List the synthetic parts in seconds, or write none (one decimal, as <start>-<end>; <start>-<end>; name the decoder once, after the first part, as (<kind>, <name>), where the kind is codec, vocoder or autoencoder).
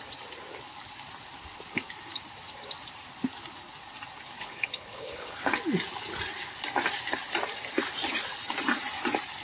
4.4-5.4 (codec, HILCodec)